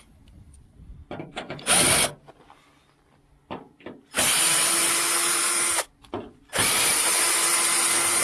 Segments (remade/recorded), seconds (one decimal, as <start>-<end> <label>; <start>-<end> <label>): 0.0-8.2 recorded